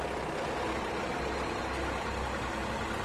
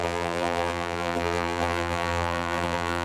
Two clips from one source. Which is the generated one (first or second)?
second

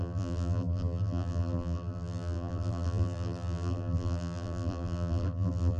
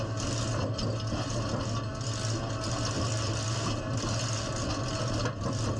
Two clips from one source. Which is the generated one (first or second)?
first